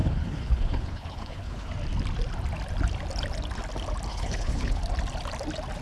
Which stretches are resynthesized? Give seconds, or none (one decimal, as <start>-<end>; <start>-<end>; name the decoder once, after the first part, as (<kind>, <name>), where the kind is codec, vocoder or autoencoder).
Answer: 0.0-1.7 (codec, HILCodec); 4.1-4.8